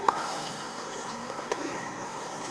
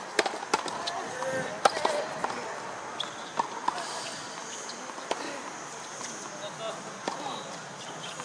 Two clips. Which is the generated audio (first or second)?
first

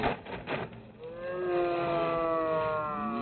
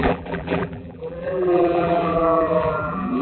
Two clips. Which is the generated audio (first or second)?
second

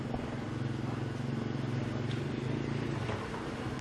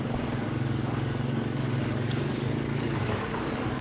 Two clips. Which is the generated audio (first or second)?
second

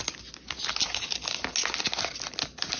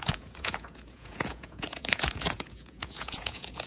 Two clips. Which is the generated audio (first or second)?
second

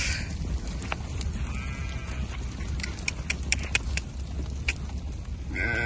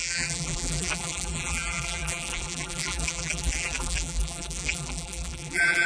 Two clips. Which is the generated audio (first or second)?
second